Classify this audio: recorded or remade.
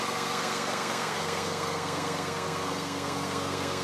remade